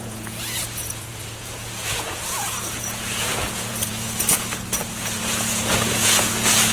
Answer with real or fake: fake